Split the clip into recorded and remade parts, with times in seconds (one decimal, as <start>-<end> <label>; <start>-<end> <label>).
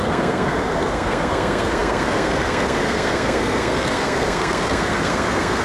0.0-5.6 remade